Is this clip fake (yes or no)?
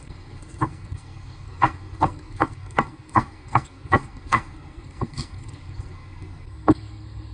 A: yes